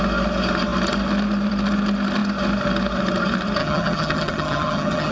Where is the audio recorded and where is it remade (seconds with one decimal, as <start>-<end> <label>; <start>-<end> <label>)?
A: 0.0-3.6 recorded; 3.6-5.1 remade